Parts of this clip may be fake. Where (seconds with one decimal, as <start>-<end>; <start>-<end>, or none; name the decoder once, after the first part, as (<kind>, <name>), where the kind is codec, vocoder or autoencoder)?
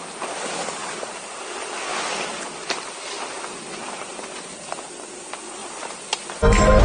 1.9-3.7 (vocoder, BigVGAN v2); 5.6-6.8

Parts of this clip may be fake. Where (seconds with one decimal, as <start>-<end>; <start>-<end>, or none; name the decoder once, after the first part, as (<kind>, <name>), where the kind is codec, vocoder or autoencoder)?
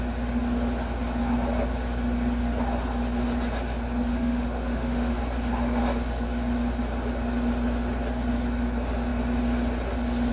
4.1-5.1 (autoencoder, DAC-VAE)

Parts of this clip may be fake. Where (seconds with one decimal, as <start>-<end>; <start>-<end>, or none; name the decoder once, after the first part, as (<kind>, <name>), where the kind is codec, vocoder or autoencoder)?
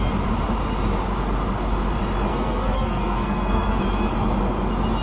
2.3-3.8 (codec, SNAC)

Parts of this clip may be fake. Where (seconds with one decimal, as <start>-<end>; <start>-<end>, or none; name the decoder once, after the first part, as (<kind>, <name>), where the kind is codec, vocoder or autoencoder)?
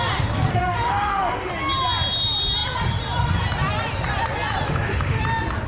0.5-1.5 (autoencoder, DAC-VAE); 4.7-5.2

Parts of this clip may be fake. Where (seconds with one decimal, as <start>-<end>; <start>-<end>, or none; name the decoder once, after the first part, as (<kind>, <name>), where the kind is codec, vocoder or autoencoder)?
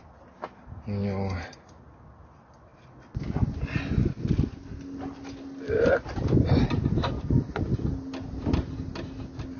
none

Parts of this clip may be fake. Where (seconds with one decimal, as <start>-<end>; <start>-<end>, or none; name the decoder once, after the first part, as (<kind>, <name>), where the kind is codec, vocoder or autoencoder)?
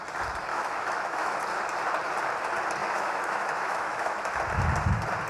0.5-1.4 (autoencoder, DAC-VAE); 2.8-4.4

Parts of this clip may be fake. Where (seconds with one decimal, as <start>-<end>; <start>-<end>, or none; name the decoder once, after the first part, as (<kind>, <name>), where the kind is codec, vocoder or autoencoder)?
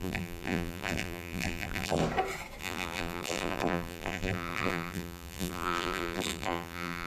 0.0-2.0 (vocoder, BigVGAN v2); 2.6-7.1